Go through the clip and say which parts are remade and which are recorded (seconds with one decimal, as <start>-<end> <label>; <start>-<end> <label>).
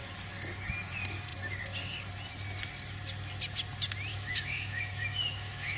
0.0-4.1 recorded; 4.1-5.8 remade